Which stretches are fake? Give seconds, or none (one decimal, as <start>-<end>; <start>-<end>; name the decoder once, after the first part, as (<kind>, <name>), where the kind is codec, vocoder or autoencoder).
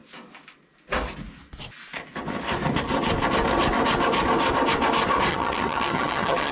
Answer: 5.3-6.5 (vocoder, HiFi-GAN)